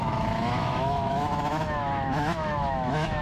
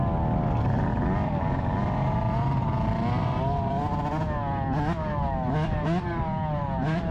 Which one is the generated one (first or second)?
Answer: first